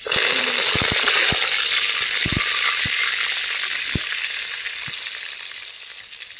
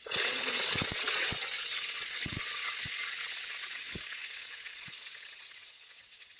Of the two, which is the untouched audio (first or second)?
first